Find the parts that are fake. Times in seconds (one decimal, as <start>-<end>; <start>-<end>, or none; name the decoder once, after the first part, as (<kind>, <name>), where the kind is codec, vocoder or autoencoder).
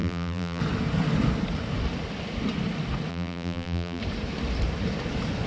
0.0-0.6 (vocoder, BigVGAN v2); 3.1-4.0